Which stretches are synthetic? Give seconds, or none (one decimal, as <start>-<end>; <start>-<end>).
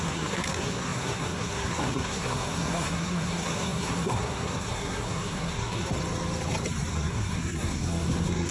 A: 0.0-5.9; 6.9-8.5